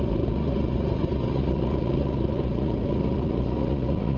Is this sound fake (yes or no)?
yes